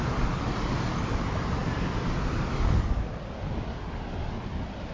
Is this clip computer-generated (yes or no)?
no